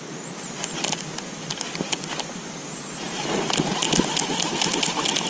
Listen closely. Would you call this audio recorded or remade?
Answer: remade